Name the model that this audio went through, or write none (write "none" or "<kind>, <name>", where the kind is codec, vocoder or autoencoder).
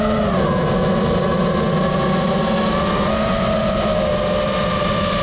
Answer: none